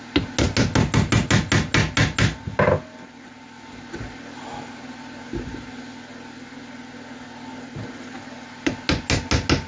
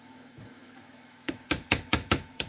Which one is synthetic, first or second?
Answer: second